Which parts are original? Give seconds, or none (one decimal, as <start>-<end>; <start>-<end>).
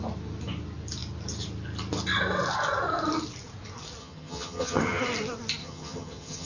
0.0-4.0; 5.0-5.6